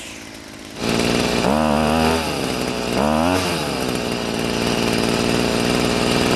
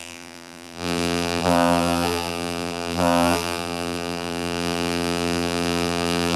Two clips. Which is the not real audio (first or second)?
second